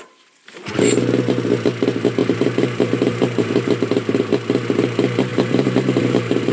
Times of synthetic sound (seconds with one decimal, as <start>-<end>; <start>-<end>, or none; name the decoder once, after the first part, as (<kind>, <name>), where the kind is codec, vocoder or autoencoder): 2.2-3.7 (vocoder, BigVGAN v2); 5.3-6.5